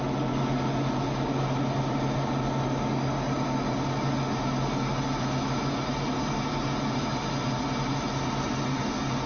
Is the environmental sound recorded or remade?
recorded